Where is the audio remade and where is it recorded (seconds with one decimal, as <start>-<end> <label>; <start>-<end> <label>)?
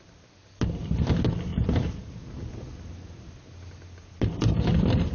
0.0-5.1 recorded